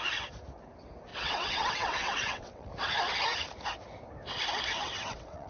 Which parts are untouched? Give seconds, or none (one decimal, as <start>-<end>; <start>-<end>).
0.0-1.1; 2.7-4.8